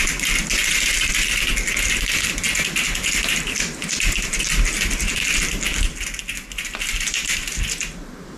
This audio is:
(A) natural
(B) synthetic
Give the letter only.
A